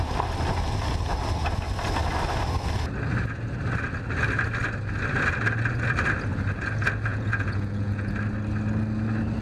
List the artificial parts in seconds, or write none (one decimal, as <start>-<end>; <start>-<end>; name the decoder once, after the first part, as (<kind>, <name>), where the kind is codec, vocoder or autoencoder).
7.1-8.1 (vocoder, Vocos)